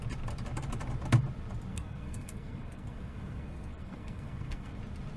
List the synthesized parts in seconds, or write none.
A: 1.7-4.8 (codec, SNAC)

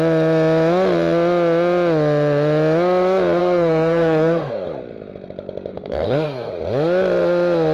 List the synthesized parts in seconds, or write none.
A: 3.4-4.5 (codec, SNAC); 5.7-6.5

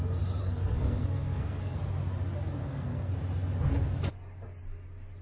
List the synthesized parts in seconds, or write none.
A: 0.4-1.8 (codec, SNAC); 2.6-3.1

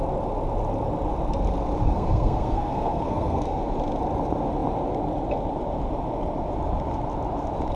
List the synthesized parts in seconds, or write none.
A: 1.8-3.6 (codec, SNAC)

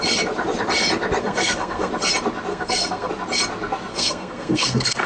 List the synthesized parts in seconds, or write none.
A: 1.2-1.9 (codec, SNAC); 2.5-3.1; 3.9-5.1

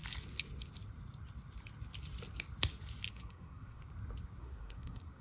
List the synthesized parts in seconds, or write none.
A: 3.1-3.8 (codec, SNAC); 4.4-5.2

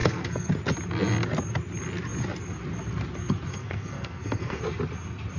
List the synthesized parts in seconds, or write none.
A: 0.0-0.5 (codec, SNAC); 3.5-4.6

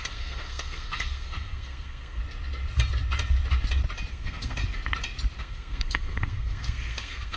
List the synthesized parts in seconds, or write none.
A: 0.0-2.2 (codec, SNAC); 4.1-4.6; 5.4-7.4